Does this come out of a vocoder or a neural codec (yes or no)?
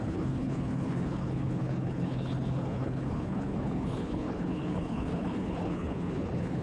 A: yes